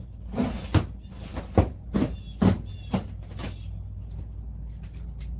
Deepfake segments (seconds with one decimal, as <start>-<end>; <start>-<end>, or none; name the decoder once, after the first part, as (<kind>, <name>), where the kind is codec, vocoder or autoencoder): none